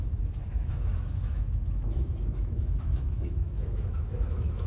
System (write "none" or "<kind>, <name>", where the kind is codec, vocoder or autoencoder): autoencoder, DAC-VAE